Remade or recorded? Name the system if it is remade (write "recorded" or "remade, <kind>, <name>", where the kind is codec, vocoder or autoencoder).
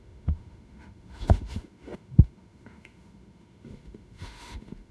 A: remade, autoencoder, DAC-VAE